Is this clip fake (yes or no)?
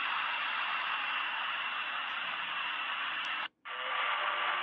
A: no